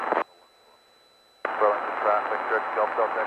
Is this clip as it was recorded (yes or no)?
yes